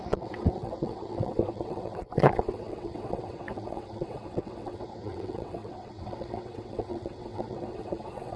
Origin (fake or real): fake